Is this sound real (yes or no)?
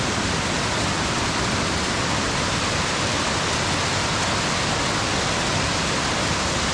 yes